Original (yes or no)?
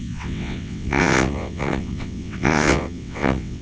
no